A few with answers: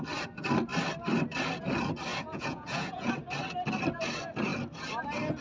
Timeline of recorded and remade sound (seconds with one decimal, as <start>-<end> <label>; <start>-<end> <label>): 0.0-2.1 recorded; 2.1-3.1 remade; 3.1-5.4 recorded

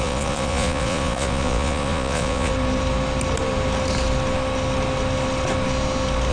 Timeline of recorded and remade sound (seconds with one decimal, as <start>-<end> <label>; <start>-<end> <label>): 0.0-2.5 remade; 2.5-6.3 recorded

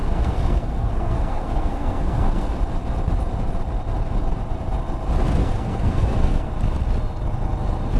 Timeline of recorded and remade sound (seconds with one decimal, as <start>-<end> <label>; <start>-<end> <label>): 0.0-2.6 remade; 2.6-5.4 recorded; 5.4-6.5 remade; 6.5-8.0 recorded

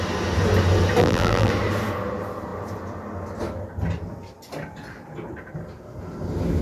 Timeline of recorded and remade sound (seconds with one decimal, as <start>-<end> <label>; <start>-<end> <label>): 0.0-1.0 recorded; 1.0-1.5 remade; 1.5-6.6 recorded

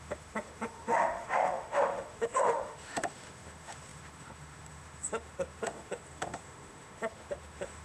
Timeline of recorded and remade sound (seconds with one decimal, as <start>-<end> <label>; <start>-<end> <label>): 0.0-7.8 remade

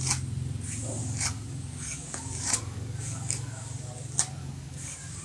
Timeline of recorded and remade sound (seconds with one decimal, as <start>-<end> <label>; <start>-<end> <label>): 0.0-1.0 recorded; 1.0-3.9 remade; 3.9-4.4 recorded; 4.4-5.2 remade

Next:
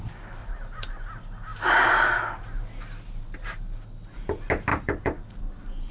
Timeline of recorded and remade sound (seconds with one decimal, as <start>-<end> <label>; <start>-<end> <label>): 0.0-0.4 recorded; 0.4-0.9 remade; 0.9-4.7 recorded; 4.7-5.9 remade